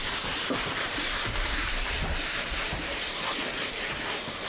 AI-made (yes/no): yes